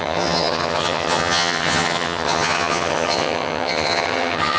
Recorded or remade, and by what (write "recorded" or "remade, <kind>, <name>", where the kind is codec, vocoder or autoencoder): remade, vocoder, HiFi-GAN